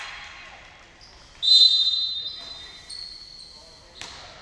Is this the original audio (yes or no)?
yes